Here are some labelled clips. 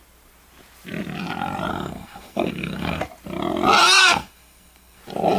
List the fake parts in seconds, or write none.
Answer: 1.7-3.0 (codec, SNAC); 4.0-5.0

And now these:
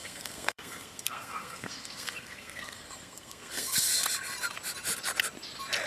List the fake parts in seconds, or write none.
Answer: 0.0-3.9 (codec, SNAC)